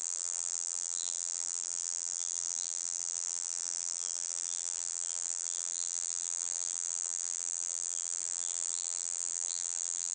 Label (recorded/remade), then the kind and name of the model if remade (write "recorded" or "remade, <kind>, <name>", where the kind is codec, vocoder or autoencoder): remade, vocoder, BigVGAN v2